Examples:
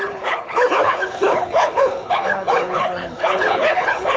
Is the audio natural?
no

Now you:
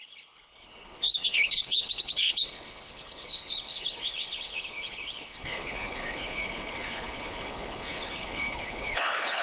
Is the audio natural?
no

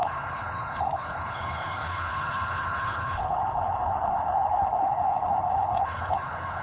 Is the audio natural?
no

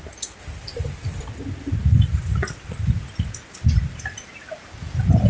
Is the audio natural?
yes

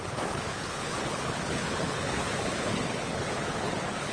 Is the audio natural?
no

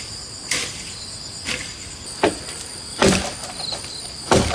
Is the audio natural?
yes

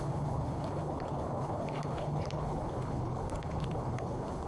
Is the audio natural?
no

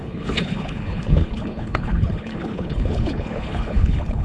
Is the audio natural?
no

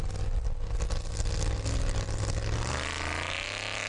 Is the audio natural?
yes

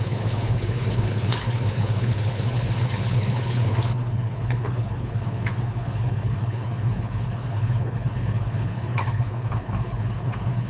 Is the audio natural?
no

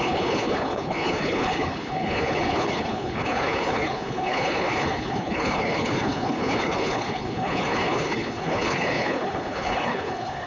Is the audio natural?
no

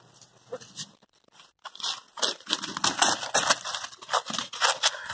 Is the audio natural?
yes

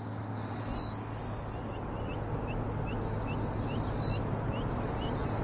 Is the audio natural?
yes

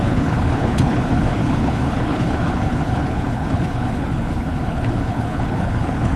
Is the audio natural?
no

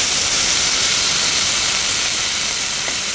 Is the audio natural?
yes